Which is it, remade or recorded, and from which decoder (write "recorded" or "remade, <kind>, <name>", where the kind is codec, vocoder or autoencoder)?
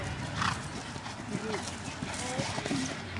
recorded